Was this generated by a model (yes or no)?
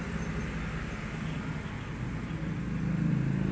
no